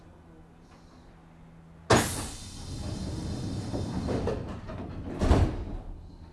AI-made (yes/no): no